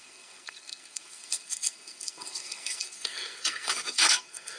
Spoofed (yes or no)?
yes